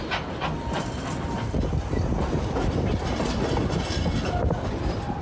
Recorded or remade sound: recorded